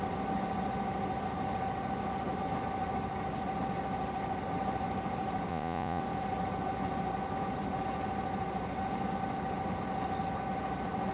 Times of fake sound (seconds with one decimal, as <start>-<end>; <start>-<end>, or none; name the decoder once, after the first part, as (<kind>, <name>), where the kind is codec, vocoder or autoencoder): 5.5-6.0 (vocoder, Vocos)